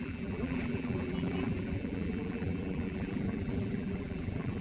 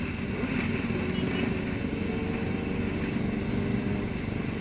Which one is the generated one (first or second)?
first